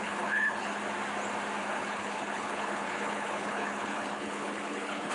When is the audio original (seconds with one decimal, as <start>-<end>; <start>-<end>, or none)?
0.8-1.7